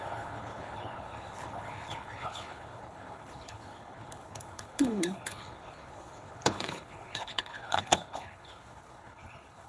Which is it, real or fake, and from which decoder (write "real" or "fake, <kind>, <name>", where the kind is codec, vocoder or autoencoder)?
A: fake, codec, HILCodec